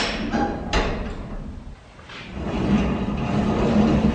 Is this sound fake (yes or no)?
no